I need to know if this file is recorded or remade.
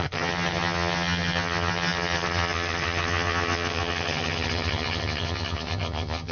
remade